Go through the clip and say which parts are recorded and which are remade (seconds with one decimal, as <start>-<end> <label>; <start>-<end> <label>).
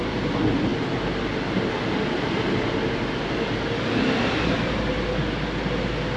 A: 0.0-6.2 recorded